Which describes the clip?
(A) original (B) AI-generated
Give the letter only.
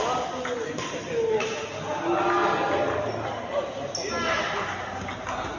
A